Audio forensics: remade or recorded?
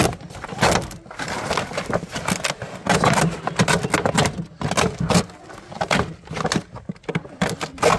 recorded